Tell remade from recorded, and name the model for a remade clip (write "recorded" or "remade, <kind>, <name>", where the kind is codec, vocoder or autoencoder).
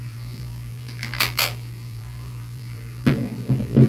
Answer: remade, vocoder, BigVGAN v2